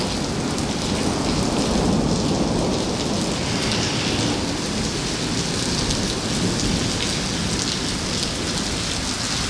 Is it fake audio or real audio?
real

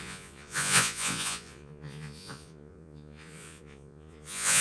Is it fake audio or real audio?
fake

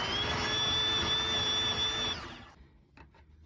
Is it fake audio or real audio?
real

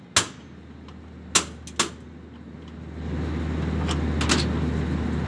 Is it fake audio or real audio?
real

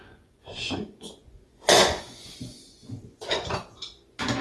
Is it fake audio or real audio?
fake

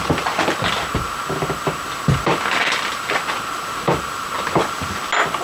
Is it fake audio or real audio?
real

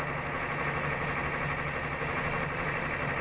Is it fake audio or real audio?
real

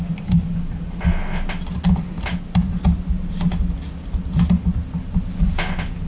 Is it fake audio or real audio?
real